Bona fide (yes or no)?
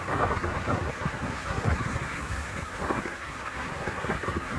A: no